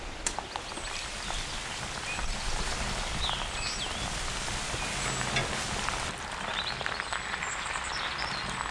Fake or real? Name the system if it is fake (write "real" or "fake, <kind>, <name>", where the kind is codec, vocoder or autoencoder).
real